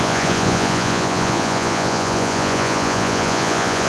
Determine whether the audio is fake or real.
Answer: fake